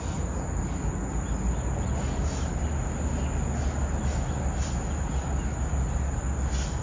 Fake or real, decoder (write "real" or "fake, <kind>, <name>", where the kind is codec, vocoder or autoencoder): real